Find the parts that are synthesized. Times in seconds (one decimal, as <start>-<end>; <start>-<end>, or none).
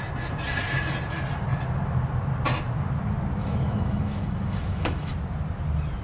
3.4-5.1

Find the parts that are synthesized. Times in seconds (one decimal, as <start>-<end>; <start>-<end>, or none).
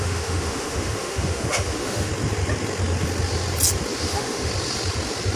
0.0-2.1; 4.0-4.5